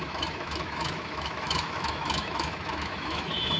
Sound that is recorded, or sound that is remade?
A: remade